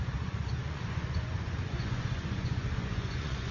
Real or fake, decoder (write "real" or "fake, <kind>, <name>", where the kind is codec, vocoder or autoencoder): fake, vocoder, Vocos